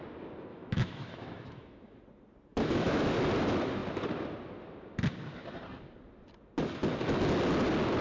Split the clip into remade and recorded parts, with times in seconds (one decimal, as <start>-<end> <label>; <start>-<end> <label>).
0.0-0.5 recorded; 0.5-2.0 remade; 2.0-2.5 recorded; 2.5-3.0 remade; 3.0-8.0 recorded